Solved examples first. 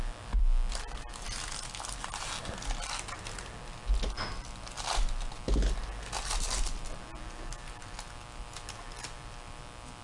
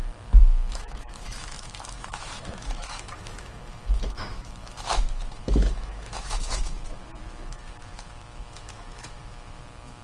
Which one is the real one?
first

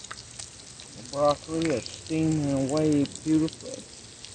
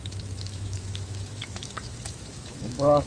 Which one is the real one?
first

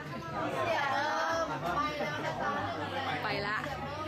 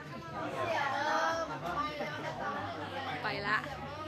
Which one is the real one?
first